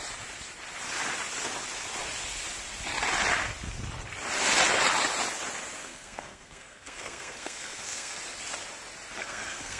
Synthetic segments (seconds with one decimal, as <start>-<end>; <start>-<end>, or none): 5.8-8.2; 9.2-9.8